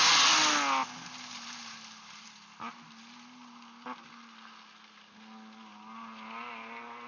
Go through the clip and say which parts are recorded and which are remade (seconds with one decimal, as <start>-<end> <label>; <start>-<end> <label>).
0.0-7.1 recorded